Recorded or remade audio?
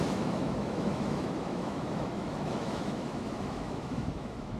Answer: remade